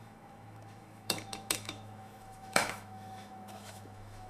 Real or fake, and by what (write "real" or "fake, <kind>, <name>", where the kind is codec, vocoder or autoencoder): fake, autoencoder, DAC-VAE